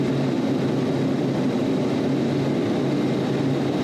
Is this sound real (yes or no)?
yes